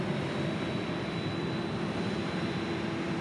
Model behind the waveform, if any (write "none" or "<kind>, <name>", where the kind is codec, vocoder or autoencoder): none